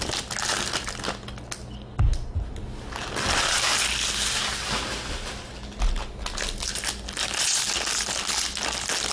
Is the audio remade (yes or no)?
no